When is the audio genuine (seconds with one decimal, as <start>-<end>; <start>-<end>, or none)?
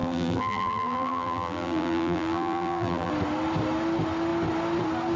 3.1-5.2